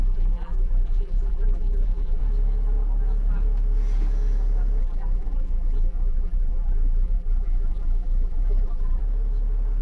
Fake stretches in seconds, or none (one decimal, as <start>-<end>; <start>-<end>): 0.0-2.2; 4.8-9.0